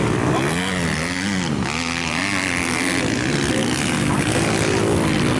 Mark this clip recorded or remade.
recorded